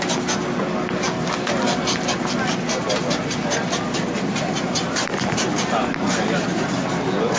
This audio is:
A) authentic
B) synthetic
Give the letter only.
A